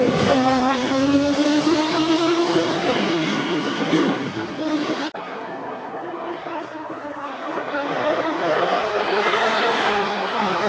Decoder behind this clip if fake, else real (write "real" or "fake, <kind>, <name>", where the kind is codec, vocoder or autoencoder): fake, codec, SNAC